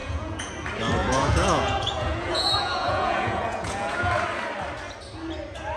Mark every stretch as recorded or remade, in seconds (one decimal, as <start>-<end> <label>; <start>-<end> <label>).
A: 0.0-0.5 remade; 0.5-1.0 recorded; 1.0-4.1 remade; 4.1-5.8 recorded